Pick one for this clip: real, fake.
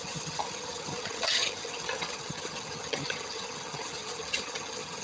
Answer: fake